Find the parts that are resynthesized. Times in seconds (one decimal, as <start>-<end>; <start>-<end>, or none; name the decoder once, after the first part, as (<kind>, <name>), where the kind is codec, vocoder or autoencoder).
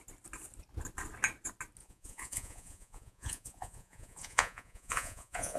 1.8-5.6 (vocoder, Vocos)